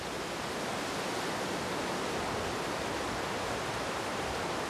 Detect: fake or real real